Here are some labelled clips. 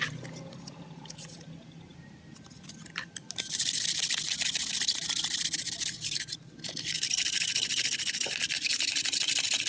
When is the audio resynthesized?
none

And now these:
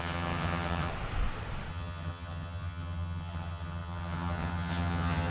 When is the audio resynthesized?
0.0-0.9 (vocoder, HiFi-GAN); 1.7-5.3

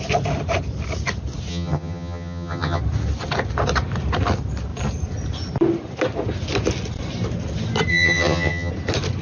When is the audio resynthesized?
1.5-2.8 (vocoder, HiFi-GAN); 7.9-8.7